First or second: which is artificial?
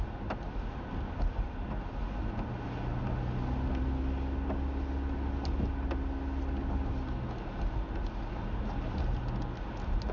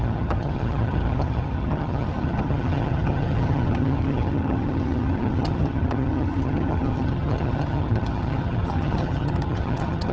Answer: second